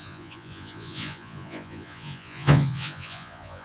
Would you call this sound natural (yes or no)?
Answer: no